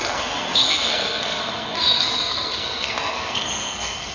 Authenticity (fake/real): fake